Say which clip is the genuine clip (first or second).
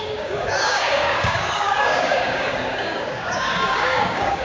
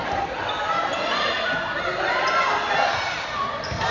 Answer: second